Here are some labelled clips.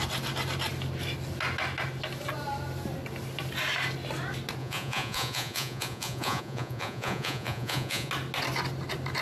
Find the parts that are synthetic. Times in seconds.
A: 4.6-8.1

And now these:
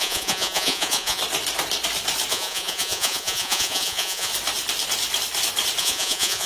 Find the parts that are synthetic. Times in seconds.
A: 0.0-1.2; 2.3-4.3; 5.8-6.5

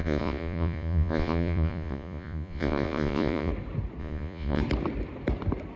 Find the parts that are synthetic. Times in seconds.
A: 0.0-3.5; 4.0-4.6